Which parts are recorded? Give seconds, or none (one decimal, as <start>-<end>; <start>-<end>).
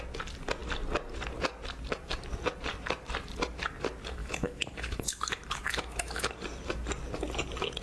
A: 0.0-4.2; 6.3-7.8